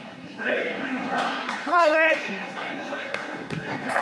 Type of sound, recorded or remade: remade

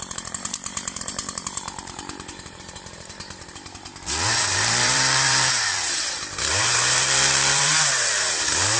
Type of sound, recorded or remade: remade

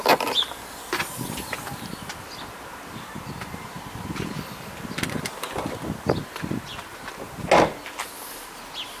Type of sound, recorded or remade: recorded